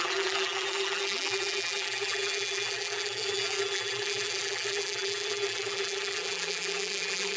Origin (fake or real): fake